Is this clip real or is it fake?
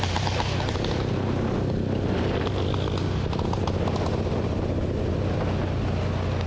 real